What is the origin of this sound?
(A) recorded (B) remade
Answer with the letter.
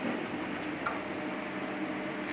A